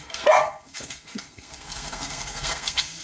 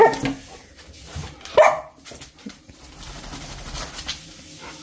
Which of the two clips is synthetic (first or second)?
first